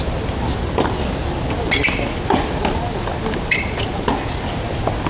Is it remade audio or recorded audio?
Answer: recorded